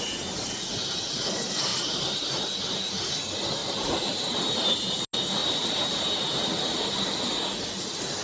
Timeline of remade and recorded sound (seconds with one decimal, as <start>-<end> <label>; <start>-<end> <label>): 0.0-1.7 recorded; 1.7-2.6 remade; 2.6-3.6 recorded; 3.6-4.4 remade; 4.4-5.4 recorded; 5.4-6.5 remade; 6.5-8.2 recorded